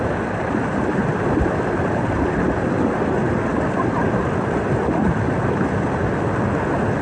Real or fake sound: real